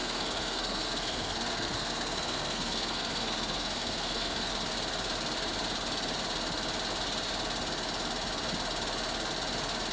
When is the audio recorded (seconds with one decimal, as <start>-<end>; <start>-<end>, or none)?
4.5-9.9